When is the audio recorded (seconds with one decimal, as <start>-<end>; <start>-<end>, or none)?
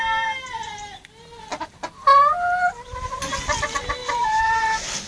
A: 0.0-4.0; 4.6-5.1